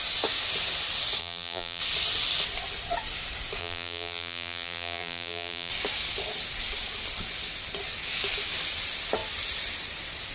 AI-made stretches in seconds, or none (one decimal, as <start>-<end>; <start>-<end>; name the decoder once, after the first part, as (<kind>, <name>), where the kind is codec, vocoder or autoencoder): 1.2-1.8 (vocoder, BigVGAN v2); 3.6-5.7